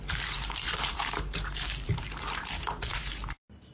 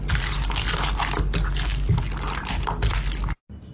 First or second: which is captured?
second